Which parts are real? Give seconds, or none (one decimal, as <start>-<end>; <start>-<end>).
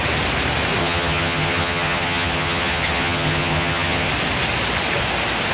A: 0.0-0.8; 4.1-5.5